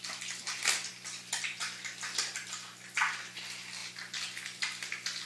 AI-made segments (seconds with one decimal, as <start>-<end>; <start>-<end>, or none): none